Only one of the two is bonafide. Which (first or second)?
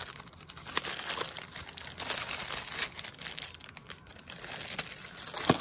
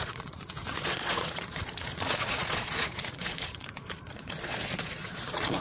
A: first